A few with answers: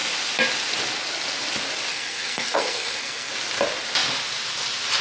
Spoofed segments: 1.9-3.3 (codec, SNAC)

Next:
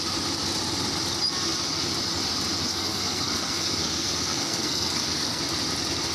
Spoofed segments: 2.7-5.4 (codec, SNAC)

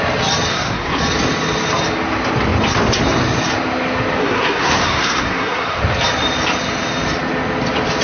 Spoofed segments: 0.5-1.0 (codec, SNAC); 4.2-5.8

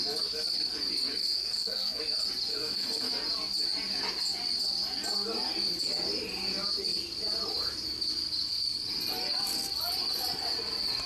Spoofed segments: 1.2-2.0 (codec, SNAC); 2.5-3.1

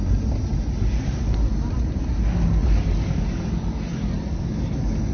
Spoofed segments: none